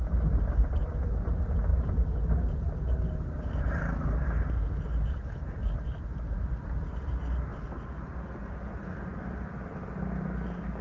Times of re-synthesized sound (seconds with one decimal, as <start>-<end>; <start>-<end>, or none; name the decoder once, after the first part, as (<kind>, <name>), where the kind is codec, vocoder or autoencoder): none